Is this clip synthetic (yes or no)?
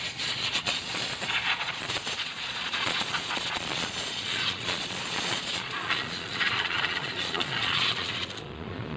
yes